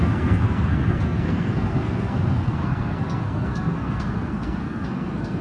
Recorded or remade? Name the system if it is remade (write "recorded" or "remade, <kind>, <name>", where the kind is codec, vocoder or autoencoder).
remade, codec, SNAC